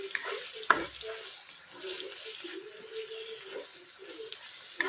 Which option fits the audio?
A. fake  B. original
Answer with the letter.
B